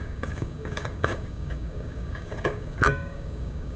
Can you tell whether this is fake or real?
fake